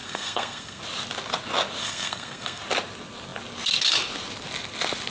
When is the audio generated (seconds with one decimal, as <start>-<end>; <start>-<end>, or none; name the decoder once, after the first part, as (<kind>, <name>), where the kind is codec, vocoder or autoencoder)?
0.0-0.8 (codec, SNAC); 1.8-2.6